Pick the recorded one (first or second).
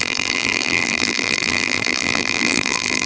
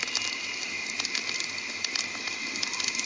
second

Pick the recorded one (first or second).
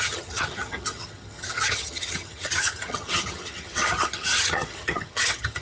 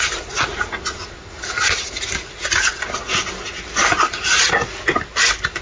second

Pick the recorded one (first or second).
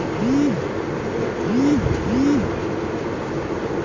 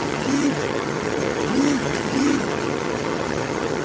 first